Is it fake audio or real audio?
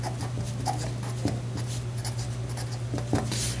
real